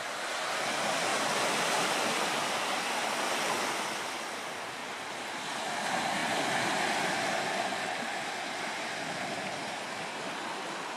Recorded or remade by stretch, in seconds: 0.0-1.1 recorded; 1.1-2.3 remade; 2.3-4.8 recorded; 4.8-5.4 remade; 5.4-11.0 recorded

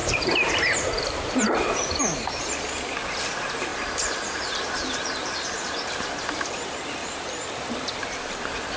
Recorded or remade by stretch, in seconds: 0.0-2.0 remade; 2.0-3.7 recorded; 3.7-5.9 remade; 5.9-7.0 recorded; 7.0-7.9 remade; 7.9-8.8 recorded

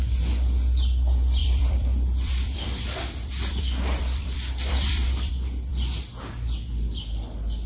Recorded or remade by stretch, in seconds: 0.0-1.4 recorded; 1.4-5.3 remade; 5.3-7.7 recorded

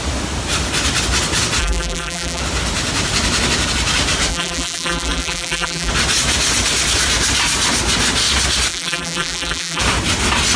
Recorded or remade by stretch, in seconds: 0.0-1.6 recorded; 1.6-2.4 remade; 2.4-4.3 recorded; 4.3-5.9 remade; 5.9-8.7 recorded; 8.7-9.8 remade; 9.8-10.6 recorded